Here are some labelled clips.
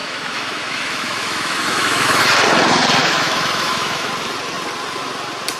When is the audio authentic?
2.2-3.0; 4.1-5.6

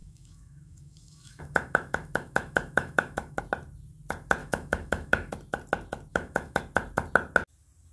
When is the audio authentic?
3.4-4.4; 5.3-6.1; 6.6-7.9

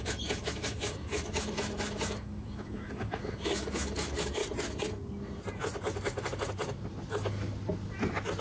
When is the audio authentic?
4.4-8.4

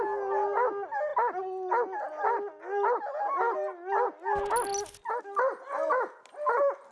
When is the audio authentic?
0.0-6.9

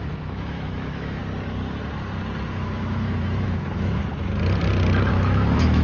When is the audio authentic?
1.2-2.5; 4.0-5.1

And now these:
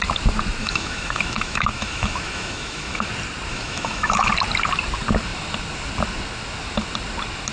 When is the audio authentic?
0.0-0.6; 3.1-3.5; 4.3-7.5

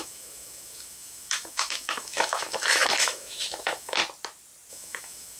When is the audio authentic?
4.0-4.7